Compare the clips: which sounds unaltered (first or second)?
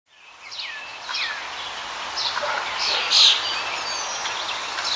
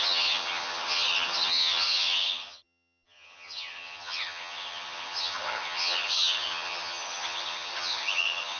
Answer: first